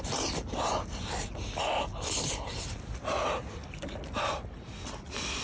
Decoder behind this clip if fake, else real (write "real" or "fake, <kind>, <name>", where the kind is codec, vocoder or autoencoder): real